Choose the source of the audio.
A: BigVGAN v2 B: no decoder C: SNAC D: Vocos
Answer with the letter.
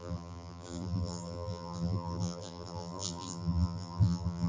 A